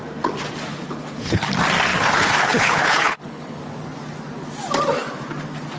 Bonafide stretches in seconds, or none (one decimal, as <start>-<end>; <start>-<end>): 0.0-0.7; 1.5-1.9; 3.6-5.8